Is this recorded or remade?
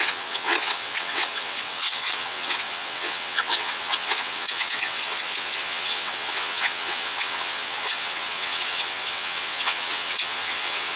remade